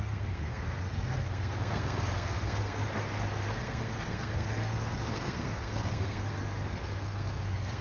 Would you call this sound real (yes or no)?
no